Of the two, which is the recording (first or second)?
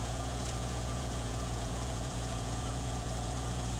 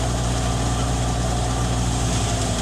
second